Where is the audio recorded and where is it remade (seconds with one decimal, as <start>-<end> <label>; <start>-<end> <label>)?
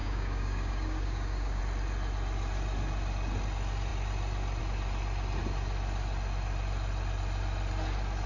0.0-1.6 remade; 1.6-8.3 recorded